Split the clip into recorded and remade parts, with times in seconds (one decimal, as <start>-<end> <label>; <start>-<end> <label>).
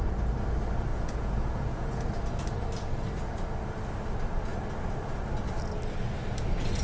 0.0-0.9 recorded; 0.9-2.0 remade; 2.0-6.8 recorded